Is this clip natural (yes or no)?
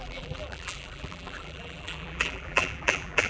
no